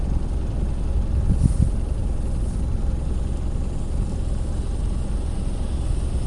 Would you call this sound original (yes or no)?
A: yes